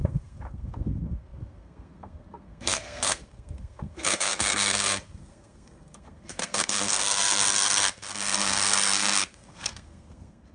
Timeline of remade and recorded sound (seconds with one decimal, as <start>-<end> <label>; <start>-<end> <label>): 0.0-10.5 remade

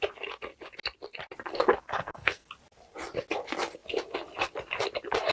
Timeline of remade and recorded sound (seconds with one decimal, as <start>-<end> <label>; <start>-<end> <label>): 0.0-1.5 recorded; 1.5-2.5 remade; 2.5-5.3 recorded